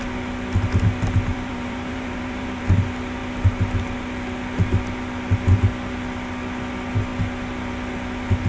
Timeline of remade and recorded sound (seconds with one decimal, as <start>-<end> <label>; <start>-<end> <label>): 0.0-1.3 recorded; 1.3-2.6 remade; 2.6-8.5 recorded